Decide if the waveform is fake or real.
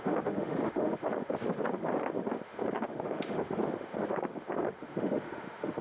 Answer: fake